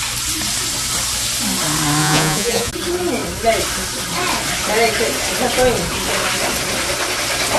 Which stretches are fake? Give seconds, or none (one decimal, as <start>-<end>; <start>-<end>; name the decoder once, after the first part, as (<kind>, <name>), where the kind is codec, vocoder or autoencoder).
2.0-2.7 (vocoder, Vocos)

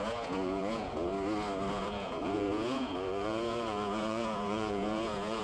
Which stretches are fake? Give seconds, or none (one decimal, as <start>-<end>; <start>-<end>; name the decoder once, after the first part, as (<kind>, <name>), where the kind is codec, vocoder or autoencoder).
0.0-1.1 (vocoder, Vocos); 1.7-5.4

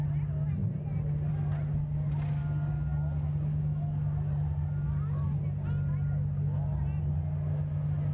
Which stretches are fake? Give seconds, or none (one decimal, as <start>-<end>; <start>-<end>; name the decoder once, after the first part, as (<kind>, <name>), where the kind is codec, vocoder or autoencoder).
none

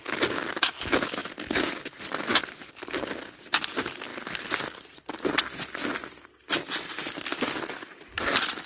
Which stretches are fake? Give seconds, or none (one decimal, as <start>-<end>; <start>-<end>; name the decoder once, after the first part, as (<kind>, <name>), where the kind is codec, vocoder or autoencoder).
none

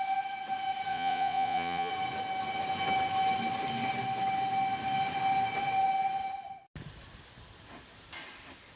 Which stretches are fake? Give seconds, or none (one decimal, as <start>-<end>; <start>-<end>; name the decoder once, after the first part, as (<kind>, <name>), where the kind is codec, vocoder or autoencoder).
0.9-1.9 (vocoder, Vocos)

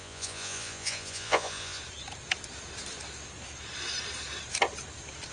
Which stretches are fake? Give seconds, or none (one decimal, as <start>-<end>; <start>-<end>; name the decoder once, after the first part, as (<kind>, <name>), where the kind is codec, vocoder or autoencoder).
0.0-1.8 (vocoder, Vocos)